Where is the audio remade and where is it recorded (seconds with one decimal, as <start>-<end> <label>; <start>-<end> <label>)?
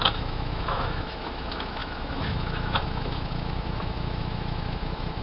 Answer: 0.0-5.2 remade